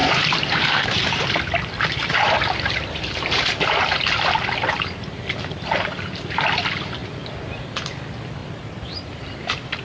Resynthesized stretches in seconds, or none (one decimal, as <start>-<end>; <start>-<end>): 0.0-4.0; 8.4-9.8